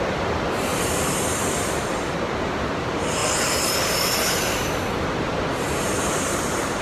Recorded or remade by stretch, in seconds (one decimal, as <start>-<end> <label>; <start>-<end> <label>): 0.0-3.2 remade; 3.2-5.8 recorded; 5.8-6.8 remade